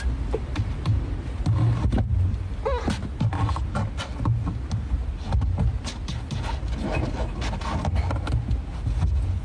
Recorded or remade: recorded